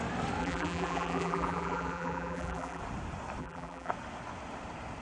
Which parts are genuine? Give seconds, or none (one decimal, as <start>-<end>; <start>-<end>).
0.0-0.4; 2.8-3.4; 3.9-5.0